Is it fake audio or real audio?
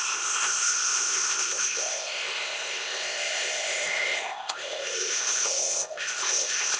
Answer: fake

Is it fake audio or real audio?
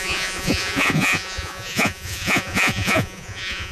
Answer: fake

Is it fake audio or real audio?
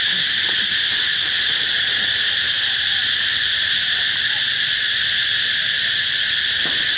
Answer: real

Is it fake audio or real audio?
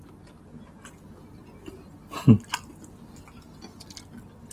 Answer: real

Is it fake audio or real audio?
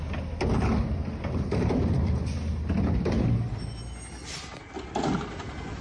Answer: real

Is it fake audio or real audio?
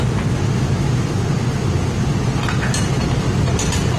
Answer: real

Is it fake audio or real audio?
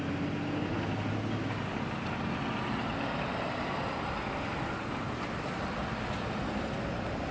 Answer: real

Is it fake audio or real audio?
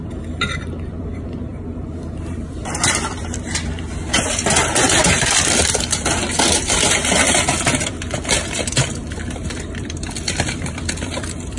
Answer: fake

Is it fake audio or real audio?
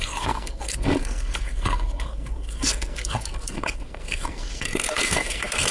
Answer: fake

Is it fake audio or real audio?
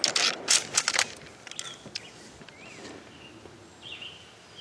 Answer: real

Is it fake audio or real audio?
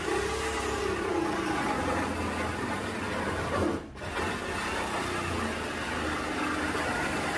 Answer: real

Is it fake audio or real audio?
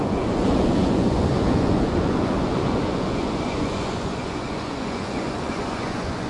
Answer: fake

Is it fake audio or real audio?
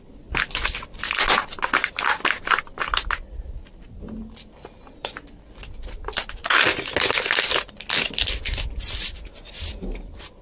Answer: real